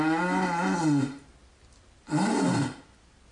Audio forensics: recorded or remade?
recorded